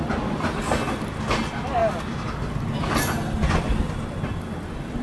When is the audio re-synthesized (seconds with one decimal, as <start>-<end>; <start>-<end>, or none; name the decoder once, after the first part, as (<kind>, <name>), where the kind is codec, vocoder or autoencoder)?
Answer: none